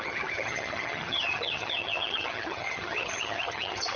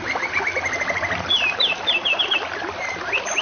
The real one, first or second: second